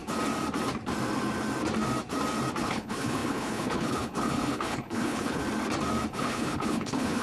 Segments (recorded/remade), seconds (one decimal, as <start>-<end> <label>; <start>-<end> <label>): 0.0-2.6 recorded; 2.6-5.4 remade; 5.4-6.1 recorded; 6.1-7.2 remade